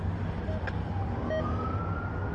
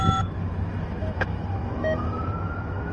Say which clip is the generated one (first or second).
second